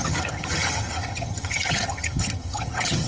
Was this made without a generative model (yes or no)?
no